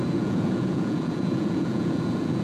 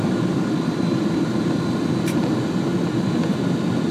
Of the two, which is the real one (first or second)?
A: second